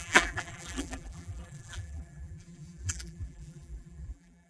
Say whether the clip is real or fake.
fake